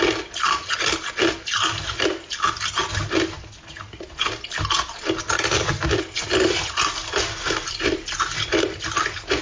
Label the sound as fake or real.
real